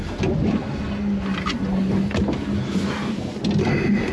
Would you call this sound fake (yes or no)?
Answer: no